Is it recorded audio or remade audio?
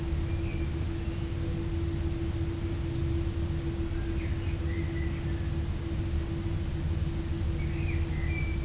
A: recorded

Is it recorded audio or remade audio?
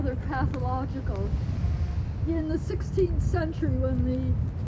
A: recorded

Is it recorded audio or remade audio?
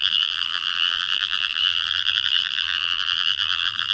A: remade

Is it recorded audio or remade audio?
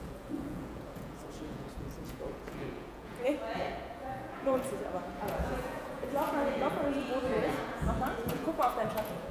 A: remade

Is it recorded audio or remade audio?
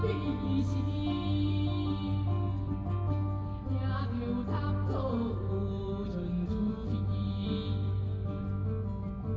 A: recorded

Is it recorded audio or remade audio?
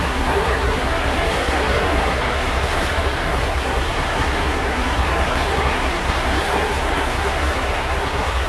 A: remade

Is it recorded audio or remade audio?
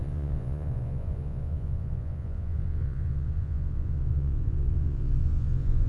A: remade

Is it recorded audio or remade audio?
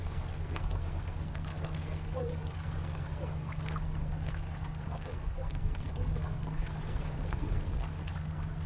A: remade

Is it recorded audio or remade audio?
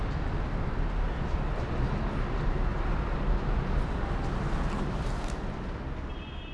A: recorded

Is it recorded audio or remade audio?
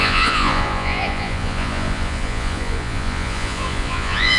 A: remade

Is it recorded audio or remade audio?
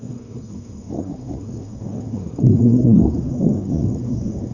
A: remade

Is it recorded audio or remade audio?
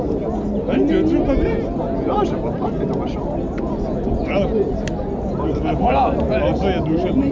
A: recorded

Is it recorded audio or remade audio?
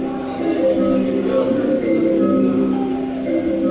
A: recorded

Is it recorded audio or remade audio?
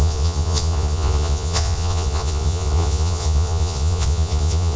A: remade